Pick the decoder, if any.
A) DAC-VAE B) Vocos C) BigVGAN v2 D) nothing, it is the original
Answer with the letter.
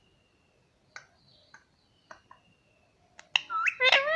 D